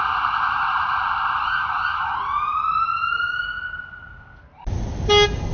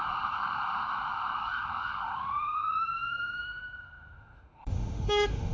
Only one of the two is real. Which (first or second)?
first